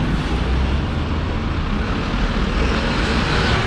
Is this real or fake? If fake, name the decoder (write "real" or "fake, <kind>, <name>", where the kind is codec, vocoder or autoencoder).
real